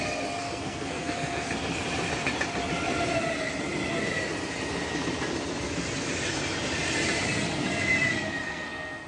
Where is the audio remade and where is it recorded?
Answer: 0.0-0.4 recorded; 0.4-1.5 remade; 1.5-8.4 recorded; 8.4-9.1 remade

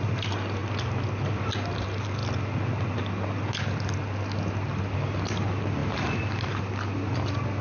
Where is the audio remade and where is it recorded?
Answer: 0.0-7.6 recorded

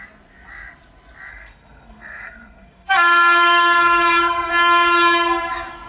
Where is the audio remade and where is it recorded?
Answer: 0.0-1.3 recorded; 1.3-4.5 remade; 4.5-5.9 recorded

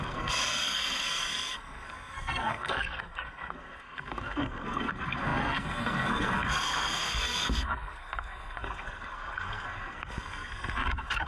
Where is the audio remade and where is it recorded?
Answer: 0.0-11.3 remade

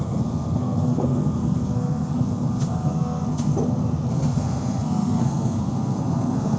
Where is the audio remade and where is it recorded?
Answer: 0.0-3.5 remade; 3.5-4.1 recorded; 4.1-6.6 remade

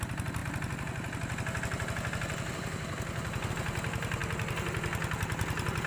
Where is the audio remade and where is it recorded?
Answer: 0.0-5.9 recorded